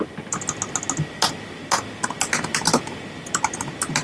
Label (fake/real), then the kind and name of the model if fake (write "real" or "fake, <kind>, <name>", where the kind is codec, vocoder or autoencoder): real